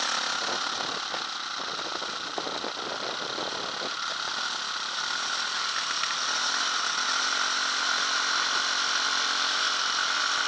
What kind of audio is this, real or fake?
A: real